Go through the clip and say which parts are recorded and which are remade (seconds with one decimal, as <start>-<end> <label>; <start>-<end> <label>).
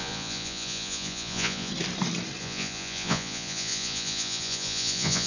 0.0-1.7 remade; 1.7-2.4 recorded; 2.4-5.3 remade